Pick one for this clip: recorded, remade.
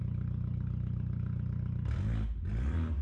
recorded